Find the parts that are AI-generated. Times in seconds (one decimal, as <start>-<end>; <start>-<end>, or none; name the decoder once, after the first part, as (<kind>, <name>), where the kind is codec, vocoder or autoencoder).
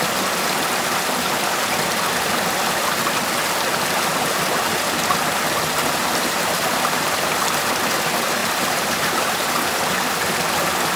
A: 6.0-7.0 (vocoder, BigVGAN v2); 8.4-9.6